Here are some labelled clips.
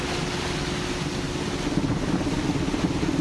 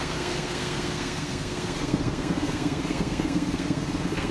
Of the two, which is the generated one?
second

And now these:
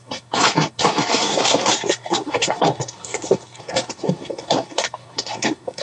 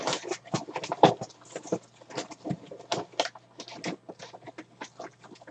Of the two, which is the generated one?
first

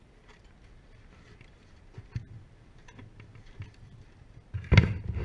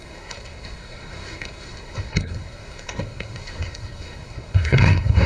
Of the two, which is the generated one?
second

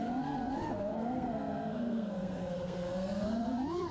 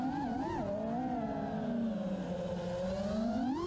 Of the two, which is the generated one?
first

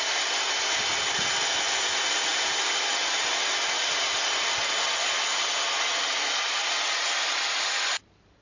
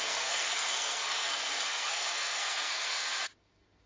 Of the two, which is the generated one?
second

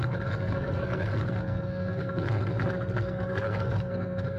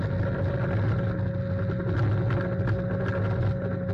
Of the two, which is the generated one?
first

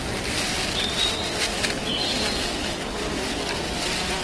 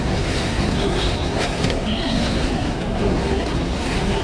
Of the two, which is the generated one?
second